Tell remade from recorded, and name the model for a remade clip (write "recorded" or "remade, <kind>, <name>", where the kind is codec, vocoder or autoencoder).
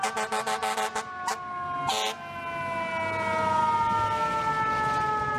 recorded